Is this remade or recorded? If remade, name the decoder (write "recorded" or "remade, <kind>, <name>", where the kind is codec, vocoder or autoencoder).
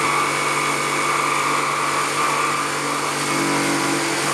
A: recorded